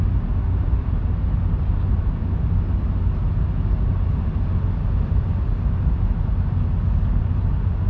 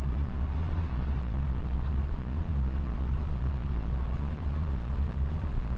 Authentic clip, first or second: first